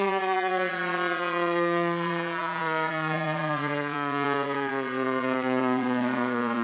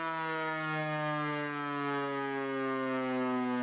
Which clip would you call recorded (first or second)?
second